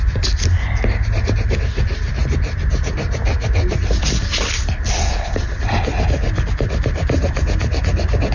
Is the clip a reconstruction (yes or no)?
no